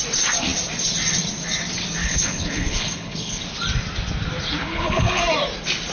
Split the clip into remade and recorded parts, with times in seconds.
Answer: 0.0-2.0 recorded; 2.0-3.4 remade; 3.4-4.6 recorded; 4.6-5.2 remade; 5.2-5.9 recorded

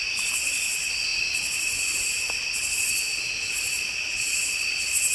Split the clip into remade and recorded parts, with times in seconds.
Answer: 0.0-5.1 recorded

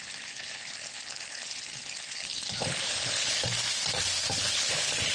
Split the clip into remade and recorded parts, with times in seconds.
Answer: 0.0-3.5 remade; 3.5-4.4 recorded; 4.4-5.1 remade

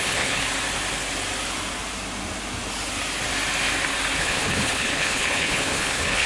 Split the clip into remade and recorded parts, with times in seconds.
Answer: 0.0-0.4 remade; 0.4-4.2 recorded; 4.2-6.3 remade

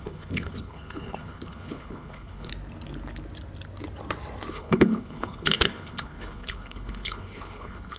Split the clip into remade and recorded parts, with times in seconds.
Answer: 0.0-2.5 remade; 2.5-4.5 recorded; 4.5-8.0 remade